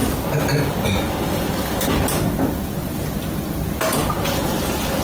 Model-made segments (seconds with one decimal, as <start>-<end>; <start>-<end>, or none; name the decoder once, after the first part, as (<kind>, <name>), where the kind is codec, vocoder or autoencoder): none